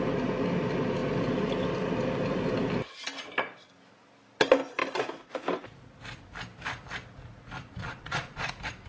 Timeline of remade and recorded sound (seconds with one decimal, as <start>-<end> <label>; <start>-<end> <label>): 0.0-7.8 recorded; 7.8-8.5 remade; 8.5-8.9 recorded